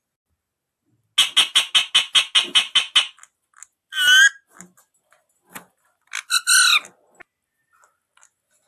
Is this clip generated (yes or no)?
no